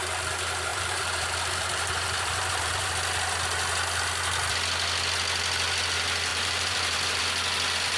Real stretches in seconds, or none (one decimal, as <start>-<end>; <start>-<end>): 0.0-0.7; 2.9-6.3; 7.2-8.0